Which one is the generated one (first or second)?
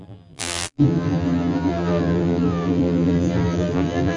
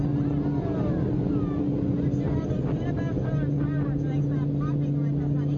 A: first